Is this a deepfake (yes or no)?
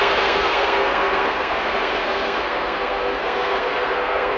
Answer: yes